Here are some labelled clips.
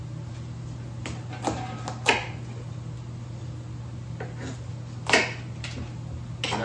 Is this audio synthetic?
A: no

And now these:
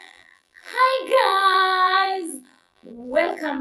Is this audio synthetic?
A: yes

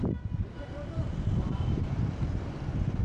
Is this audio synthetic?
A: yes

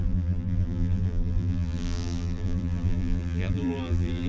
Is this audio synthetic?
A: yes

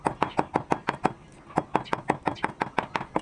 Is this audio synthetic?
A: no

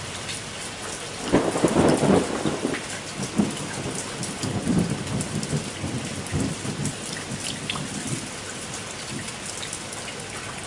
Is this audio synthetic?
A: no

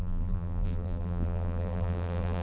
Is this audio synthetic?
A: yes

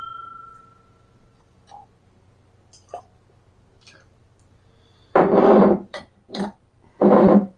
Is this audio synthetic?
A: yes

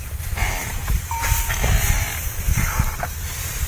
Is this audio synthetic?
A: yes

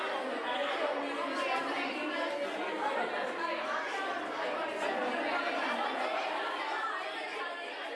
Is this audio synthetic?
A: no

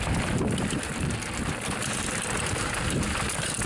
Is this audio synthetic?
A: yes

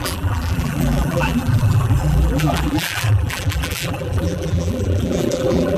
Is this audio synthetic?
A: yes